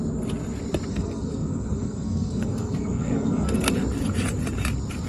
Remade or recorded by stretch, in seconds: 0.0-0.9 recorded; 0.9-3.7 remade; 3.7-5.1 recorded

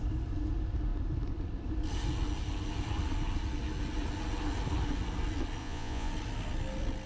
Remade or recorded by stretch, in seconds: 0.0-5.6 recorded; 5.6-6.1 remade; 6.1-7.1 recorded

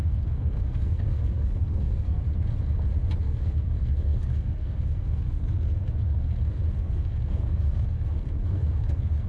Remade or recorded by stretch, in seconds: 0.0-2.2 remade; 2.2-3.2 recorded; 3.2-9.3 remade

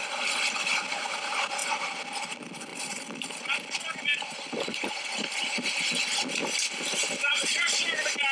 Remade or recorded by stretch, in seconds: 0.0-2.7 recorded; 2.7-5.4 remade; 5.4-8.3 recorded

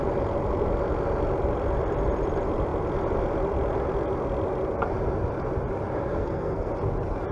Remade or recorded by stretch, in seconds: 0.0-6.1 recorded; 6.1-6.7 remade; 6.7-7.3 recorded